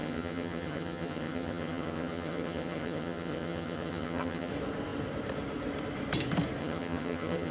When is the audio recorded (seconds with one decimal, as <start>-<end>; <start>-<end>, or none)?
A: 4.5-6.6